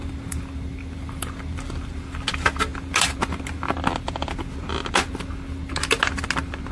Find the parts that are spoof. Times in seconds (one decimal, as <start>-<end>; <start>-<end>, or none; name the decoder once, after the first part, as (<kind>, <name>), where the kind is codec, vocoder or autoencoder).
none